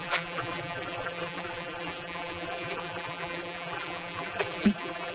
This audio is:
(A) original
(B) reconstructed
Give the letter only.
B